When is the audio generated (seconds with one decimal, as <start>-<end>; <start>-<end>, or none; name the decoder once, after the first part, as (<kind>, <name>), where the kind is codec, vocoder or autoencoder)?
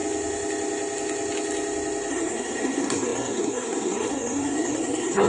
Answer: 2.1-5.3 (codec, SNAC)